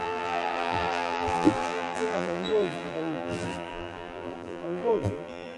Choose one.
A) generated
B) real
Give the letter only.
A